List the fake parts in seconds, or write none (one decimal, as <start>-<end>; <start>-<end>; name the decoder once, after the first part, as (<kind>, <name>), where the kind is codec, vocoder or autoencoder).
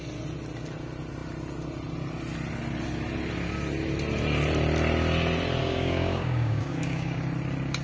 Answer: 5.6-7.2 (codec, DAC)